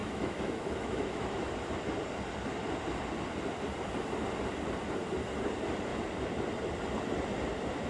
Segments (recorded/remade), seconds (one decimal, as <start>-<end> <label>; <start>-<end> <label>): 0.0-1.5 remade; 1.5-7.9 recorded